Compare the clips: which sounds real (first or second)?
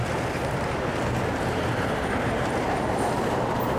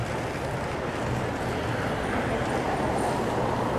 second